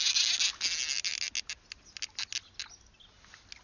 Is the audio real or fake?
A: real